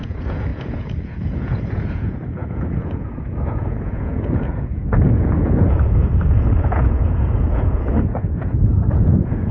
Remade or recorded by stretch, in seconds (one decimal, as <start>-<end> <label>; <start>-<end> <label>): 0.0-9.5 remade